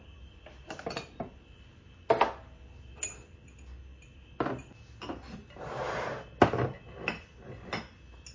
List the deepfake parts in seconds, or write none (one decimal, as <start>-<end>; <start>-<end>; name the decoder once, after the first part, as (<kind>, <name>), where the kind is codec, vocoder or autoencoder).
none